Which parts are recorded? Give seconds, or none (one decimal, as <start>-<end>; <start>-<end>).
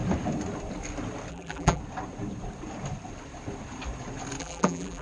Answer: 0.0-1.3; 1.8-4.4